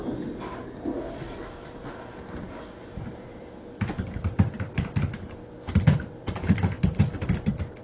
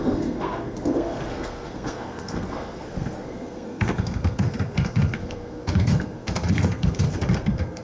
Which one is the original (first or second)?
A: first